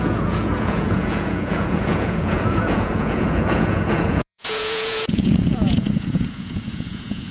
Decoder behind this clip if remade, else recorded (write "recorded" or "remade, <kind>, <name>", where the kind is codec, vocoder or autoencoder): remade, vocoder, Vocos